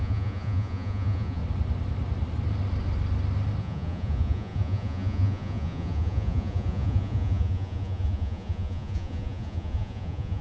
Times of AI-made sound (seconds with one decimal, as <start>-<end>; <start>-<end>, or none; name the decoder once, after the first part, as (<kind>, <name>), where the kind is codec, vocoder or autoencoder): 0.0-1.4 (vocoder, Vocos); 3.6-10.4